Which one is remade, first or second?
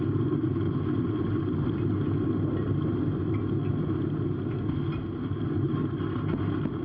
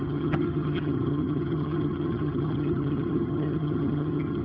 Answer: second